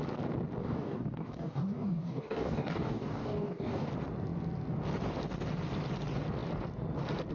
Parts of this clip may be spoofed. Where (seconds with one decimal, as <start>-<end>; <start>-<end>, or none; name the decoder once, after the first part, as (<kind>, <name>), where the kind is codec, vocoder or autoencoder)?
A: 0.6-3.9 (codec, DAC)